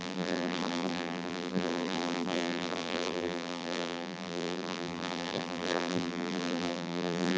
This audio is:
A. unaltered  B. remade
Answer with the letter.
B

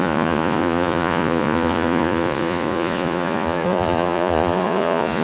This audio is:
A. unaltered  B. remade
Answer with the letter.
B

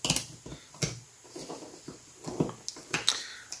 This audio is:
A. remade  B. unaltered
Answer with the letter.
B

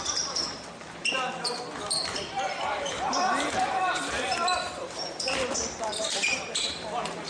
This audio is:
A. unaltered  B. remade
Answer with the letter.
B